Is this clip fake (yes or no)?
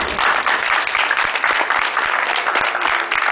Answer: no